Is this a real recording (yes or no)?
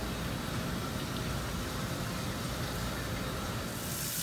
yes